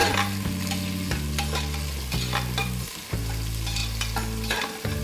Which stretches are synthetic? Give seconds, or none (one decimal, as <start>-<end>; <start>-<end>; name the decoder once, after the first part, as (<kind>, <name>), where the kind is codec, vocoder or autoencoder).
none